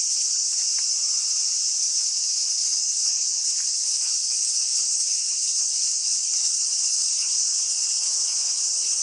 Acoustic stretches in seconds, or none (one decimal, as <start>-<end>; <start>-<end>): 0.6-1.8